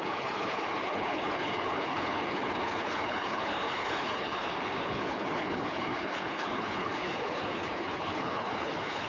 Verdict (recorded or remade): remade